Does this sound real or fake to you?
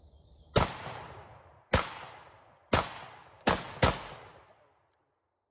real